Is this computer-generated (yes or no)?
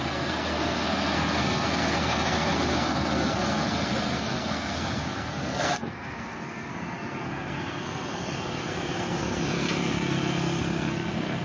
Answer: yes